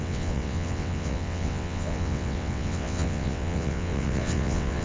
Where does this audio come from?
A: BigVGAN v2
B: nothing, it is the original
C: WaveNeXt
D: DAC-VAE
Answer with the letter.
C